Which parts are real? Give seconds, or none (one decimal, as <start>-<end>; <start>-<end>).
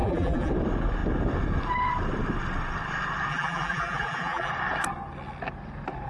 0.5-3.3; 4.5-6.1